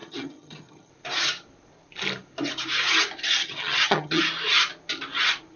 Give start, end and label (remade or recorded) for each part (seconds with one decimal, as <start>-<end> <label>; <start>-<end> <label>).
0.0-0.9 remade; 0.9-3.4 recorded; 3.4-4.2 remade; 4.2-5.6 recorded